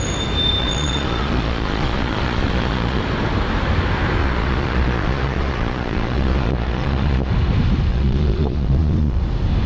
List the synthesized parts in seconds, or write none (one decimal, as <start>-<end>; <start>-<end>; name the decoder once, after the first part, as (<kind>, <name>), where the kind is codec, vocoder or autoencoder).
0.6-3.0 (vocoder, Vocos); 4.2-7.3; 7.9-9.2